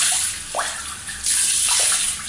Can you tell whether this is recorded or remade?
recorded